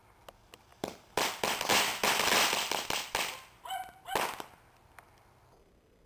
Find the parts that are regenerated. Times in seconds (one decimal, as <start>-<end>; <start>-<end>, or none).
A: none